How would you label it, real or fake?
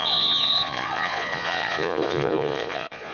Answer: fake